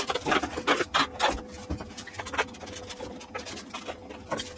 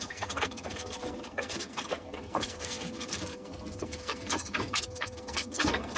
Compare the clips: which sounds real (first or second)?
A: first